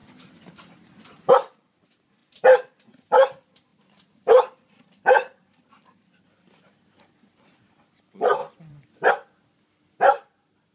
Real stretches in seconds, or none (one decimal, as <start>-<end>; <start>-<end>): 0.0-1.3

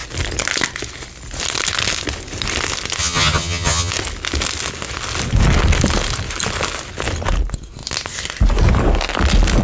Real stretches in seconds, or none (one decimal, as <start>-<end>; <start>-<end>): 0.0-3.0; 3.9-9.6

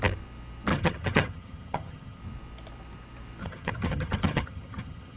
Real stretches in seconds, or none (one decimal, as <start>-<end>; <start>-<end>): 0.0-0.7; 2.2-3.4

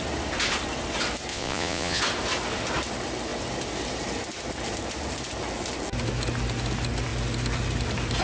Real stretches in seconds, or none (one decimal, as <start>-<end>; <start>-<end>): 0.0-1.3; 2.0-8.2

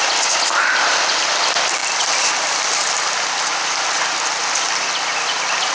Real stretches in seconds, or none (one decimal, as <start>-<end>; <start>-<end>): 0.0-5.7

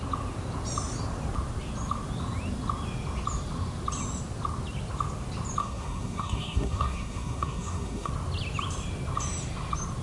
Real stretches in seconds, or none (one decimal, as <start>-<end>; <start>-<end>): 0.0-5.6; 8.1-10.0

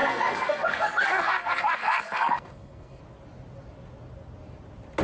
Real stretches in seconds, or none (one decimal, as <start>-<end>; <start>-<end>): 3.0-5.0